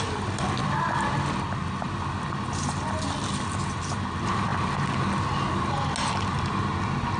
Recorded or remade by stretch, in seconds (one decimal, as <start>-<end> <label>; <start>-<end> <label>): 0.0-7.2 recorded